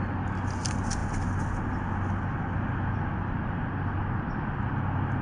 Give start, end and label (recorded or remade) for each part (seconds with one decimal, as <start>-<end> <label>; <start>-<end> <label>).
0.0-5.2 recorded

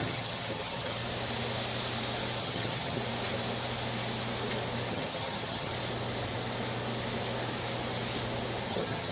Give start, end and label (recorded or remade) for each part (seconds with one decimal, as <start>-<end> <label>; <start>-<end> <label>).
0.0-1.0 remade; 1.0-2.4 recorded; 2.4-3.0 remade; 3.0-4.9 recorded; 4.9-5.7 remade; 5.7-8.7 recorded; 8.7-9.1 remade

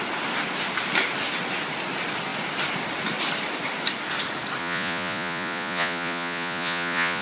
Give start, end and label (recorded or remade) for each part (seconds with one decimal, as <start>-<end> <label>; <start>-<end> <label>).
0.0-4.6 recorded; 4.6-7.2 remade

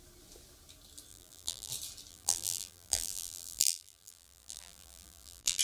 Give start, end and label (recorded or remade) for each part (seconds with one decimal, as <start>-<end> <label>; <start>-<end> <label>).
0.0-1.1 recorded; 1.1-1.7 remade; 1.7-2.1 recorded; 2.1-5.6 remade

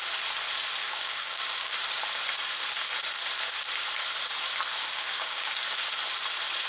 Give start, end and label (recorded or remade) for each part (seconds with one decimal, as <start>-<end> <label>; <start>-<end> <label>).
0.0-0.8 recorded; 0.8-1.7 remade; 1.7-4.8 recorded; 4.8-5.6 remade; 5.6-6.7 recorded

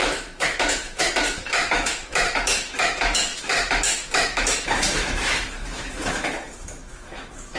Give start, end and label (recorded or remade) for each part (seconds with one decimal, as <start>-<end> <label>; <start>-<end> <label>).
0.0-7.6 remade

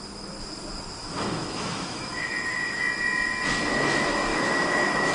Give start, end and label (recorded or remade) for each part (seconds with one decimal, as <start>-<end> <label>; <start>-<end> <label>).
0.0-1.0 recorded; 1.0-2.8 remade; 2.8-4.3 recorded; 4.3-5.1 remade

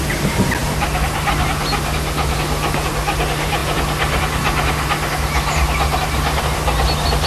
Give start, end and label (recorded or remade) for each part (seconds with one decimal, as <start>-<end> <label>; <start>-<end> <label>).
0.0-7.3 recorded